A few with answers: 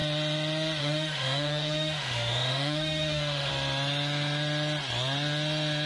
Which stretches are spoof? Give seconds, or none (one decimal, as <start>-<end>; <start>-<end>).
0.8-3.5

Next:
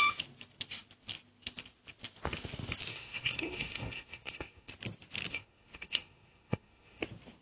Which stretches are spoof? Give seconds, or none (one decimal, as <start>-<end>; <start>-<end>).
2.9-4.7; 5.3-7.0

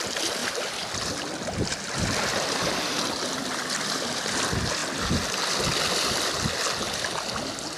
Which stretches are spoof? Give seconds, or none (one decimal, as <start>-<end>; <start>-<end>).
none

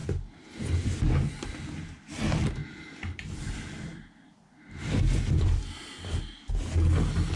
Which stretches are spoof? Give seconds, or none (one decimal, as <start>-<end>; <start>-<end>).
2.6-5.6

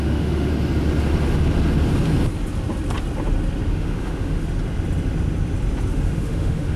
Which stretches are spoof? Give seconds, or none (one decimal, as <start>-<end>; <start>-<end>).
0.0-0.5; 3.7-4.4; 5.9-6.8